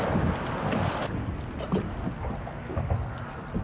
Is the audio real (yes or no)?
yes